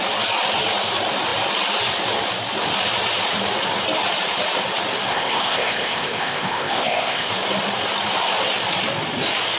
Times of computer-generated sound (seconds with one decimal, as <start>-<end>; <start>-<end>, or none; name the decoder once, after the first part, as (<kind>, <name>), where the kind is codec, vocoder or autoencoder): 5.1-7.3 (codec, ZipCodec)